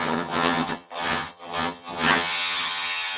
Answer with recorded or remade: remade